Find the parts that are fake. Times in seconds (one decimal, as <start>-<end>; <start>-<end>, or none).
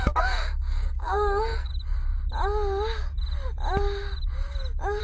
0.0-1.7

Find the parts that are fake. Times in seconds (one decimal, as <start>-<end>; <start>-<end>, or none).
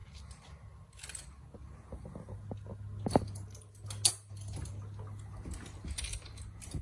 none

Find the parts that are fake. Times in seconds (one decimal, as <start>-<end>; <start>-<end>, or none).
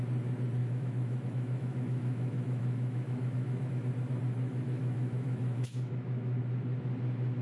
0.6-3.9; 4.5-6.4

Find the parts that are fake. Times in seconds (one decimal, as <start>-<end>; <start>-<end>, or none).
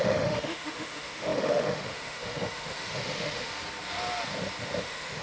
0.0-3.5; 4.8-5.2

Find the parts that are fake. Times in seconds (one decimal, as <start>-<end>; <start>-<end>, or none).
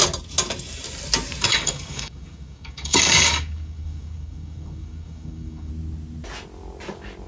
1.5-5.7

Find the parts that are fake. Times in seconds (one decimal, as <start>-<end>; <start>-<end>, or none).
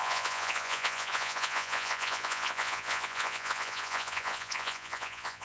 0.0-5.4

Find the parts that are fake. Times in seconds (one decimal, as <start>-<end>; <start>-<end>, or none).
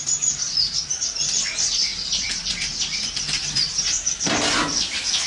0.0-5.3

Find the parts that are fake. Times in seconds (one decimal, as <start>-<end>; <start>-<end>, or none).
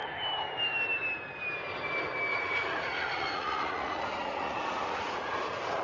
2.3-5.8